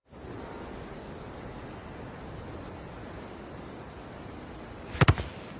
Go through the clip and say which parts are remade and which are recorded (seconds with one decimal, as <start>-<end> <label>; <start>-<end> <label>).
0.0-5.6 recorded